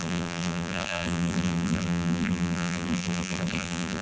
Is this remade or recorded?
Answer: remade